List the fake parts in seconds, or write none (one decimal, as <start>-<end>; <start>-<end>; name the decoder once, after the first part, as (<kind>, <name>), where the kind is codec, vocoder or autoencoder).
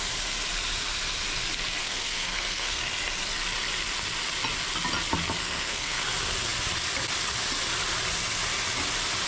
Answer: 1.8-2.8 (codec, SNAC); 5.4-6.0